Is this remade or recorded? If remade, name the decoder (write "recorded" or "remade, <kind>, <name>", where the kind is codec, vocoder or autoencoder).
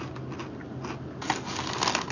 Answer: recorded